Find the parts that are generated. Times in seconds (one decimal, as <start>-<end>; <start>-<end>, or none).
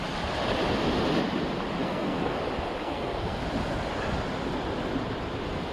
1.8-2.4; 2.8-3.4